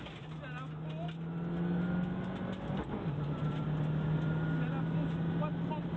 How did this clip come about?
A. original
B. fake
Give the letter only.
A